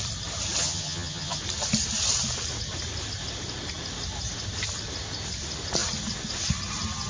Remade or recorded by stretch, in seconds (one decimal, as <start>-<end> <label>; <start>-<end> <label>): 0.0-0.6 recorded; 0.6-1.4 remade; 1.4-7.1 recorded

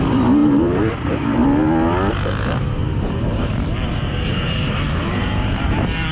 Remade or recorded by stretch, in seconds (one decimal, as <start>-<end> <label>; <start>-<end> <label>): 0.0-1.4 remade; 1.4-2.1 recorded; 2.1-6.1 remade